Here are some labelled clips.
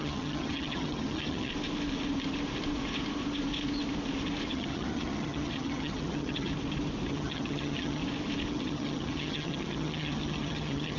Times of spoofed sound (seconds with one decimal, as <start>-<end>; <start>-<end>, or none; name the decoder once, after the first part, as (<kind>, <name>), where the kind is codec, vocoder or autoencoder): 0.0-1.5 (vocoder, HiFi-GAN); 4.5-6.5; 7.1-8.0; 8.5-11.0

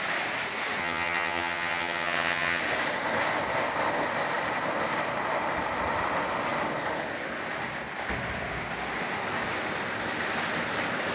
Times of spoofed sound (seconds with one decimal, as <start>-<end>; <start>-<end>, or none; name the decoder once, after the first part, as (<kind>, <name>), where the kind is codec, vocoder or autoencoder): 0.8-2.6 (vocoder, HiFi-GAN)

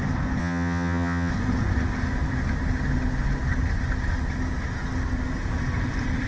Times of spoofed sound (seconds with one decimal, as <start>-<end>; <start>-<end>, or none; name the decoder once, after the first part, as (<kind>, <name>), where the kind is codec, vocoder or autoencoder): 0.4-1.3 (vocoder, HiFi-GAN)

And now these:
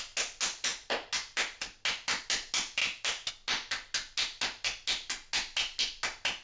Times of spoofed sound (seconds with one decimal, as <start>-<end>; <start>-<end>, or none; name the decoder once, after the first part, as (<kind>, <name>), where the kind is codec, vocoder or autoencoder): none

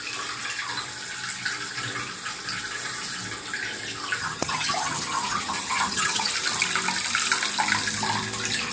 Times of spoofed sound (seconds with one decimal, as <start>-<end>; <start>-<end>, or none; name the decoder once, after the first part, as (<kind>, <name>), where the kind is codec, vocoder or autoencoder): 4.2-6.3 (vocoder, HiFi-GAN)